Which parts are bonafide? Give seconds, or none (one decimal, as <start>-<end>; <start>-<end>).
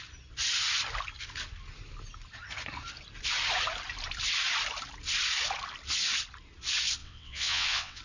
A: 0.0-7.0